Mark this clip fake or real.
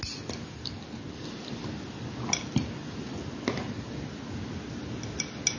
real